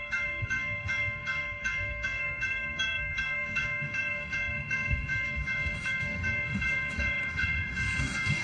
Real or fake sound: fake